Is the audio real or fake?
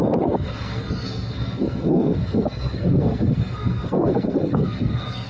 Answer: fake